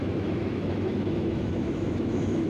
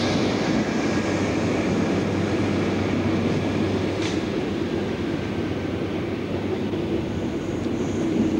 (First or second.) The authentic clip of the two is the second